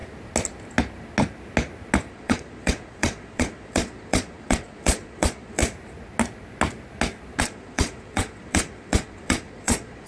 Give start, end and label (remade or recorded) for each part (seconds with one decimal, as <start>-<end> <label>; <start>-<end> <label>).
0.0-2.1 recorded; 2.1-5.6 remade; 5.6-7.4 recorded; 7.4-10.1 remade